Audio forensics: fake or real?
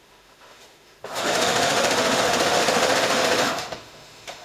fake